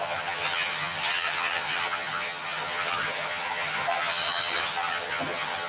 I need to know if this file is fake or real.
fake